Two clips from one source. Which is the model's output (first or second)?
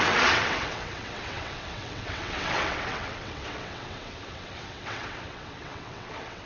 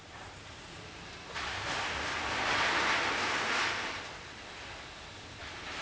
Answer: first